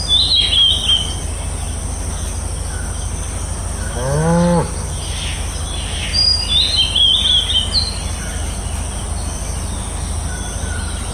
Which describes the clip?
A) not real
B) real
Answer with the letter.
B